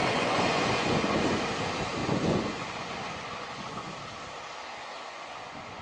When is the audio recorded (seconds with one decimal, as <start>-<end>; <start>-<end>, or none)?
1.4-2.0; 3.9-4.8